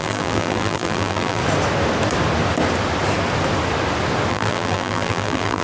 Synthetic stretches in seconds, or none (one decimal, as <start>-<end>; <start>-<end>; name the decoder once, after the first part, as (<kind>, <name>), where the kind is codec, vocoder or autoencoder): 0.0-1.4 (vocoder, BigVGAN v2); 4.3-5.6